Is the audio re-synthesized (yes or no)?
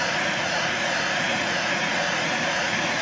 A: yes